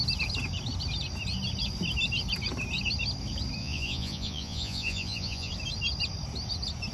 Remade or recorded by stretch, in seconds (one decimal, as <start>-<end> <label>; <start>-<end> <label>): 0.0-3.6 recorded; 3.6-5.5 remade; 5.5-6.9 recorded